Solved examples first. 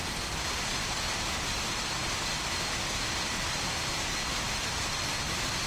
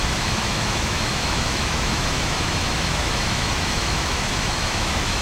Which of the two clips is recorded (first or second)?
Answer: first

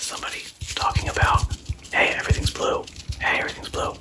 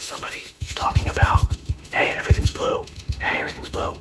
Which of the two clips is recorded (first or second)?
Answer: first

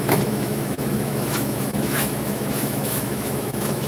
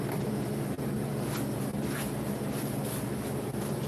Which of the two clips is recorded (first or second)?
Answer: second